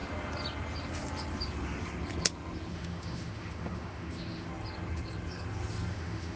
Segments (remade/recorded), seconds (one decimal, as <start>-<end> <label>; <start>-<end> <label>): 0.0-2.7 recorded; 2.7-4.5 remade; 4.5-5.9 recorded; 5.9-6.4 remade